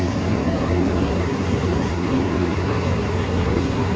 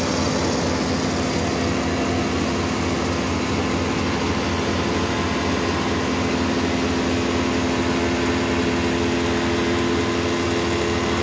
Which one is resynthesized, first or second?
first